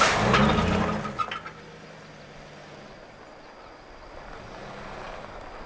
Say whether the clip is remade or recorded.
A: recorded